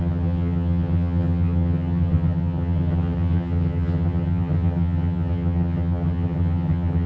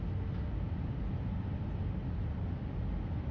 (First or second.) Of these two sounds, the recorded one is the second